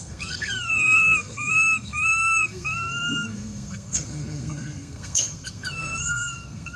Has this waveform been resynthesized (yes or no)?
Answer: yes